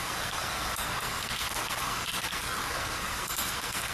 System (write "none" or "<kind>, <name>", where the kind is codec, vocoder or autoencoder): codec, SNAC